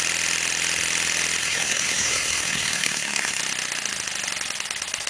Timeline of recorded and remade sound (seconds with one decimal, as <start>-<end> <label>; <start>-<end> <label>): 0.0-1.4 recorded; 1.4-3.4 remade; 3.4-5.1 recorded